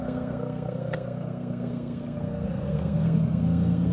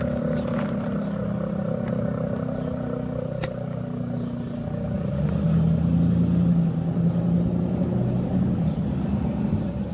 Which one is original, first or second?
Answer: second